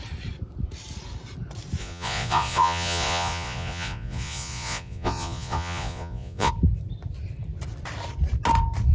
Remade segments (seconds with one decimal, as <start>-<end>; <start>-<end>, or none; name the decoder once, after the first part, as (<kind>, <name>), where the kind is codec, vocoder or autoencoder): 1.8-6.5 (vocoder, Vocos)